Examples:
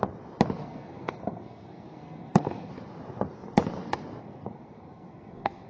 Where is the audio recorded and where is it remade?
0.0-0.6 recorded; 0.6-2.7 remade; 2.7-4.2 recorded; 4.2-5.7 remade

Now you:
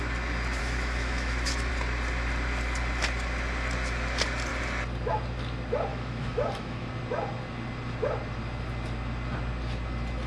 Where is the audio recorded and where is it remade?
0.0-0.6 recorded; 0.6-1.7 remade; 1.7-5.9 recorded; 5.9-6.9 remade; 6.9-10.3 recorded

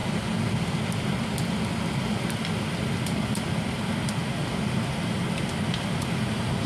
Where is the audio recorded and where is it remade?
0.0-6.7 recorded

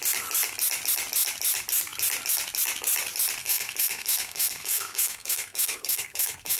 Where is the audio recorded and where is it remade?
0.0-3.4 recorded; 3.4-6.6 remade

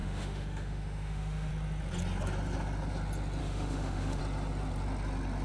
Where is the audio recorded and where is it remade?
0.0-1.5 remade; 1.5-3.4 recorded; 3.4-4.2 remade; 4.2-5.4 recorded